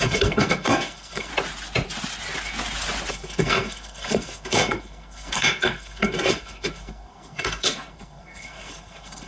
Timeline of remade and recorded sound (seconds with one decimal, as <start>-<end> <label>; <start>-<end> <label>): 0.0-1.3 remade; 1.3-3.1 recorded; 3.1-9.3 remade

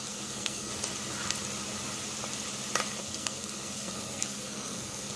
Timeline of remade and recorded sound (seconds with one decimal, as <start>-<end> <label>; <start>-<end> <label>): 0.0-0.7 remade; 0.7-3.0 recorded; 3.0-5.2 remade

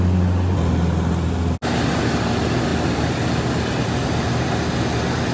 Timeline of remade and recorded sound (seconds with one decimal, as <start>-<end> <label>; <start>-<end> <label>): 0.0-5.3 recorded